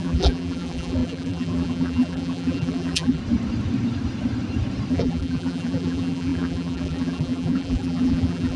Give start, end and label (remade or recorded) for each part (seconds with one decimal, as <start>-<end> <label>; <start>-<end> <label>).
0.0-3.2 remade; 3.2-4.9 recorded; 4.9-8.6 remade